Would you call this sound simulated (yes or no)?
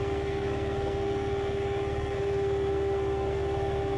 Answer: yes